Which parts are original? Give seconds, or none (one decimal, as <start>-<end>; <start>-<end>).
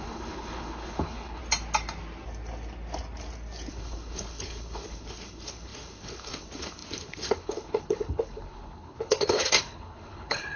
1.4-3.7